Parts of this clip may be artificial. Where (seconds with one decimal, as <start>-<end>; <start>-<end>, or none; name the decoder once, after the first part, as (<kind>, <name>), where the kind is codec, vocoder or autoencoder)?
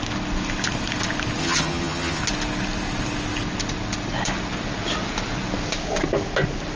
1.4-2.2 (vocoder, HiFi-GAN)